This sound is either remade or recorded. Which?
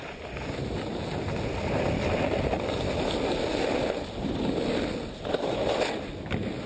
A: recorded